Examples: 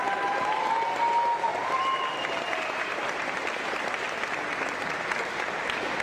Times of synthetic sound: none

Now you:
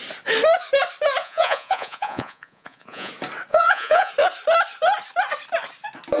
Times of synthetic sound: 1.2-3.1 (vocoder, Vocos); 3.5-4.1

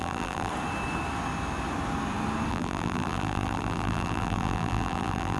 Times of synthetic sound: 0.0-0.5 (vocoder, BigVGAN v2); 2.5-5.4

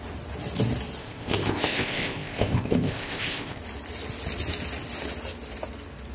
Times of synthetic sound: 1.0-3.6 (codec, ZipCodec)

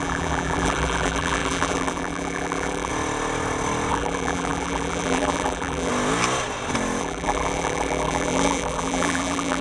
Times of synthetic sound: 0.0-2.9 (vocoder, BigVGAN v2); 3.9-5.9; 7.0-9.6